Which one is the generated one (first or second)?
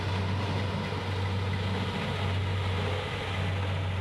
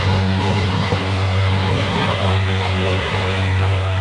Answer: second